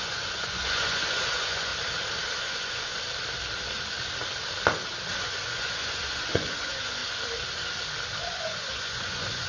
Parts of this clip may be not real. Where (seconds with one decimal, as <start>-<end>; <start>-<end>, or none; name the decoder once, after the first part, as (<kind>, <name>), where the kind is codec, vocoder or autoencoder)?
0.0-1.7 (vocoder, Vocos); 2.4-2.9; 5.2-7.0; 8.2-9.5